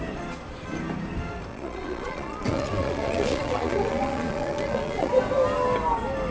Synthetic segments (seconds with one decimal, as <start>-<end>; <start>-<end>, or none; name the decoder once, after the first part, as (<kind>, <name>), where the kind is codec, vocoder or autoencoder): 1.5-5.1 (vocoder, Vocos)